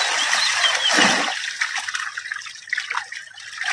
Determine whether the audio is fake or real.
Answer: real